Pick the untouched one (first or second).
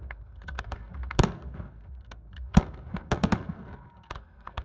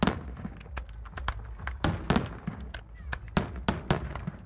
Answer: second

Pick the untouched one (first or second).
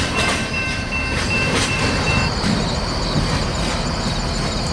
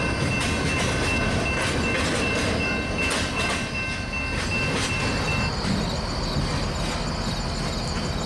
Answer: second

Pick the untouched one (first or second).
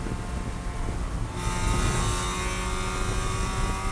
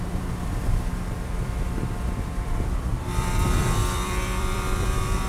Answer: first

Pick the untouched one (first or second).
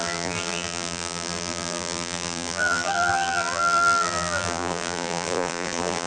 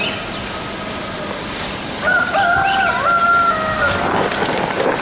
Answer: second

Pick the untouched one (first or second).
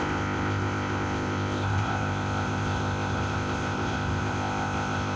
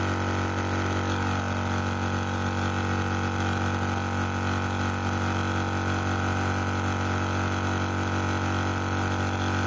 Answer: second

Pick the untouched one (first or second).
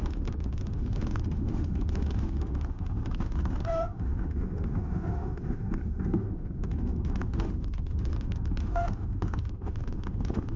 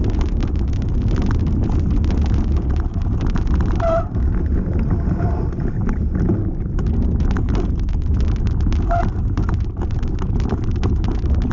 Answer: second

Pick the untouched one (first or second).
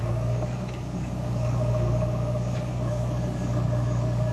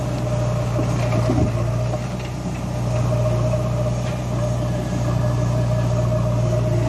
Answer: second